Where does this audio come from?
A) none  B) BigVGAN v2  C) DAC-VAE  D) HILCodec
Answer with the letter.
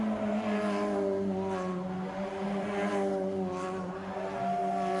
A